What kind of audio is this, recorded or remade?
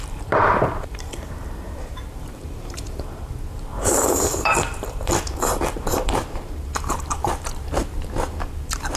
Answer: remade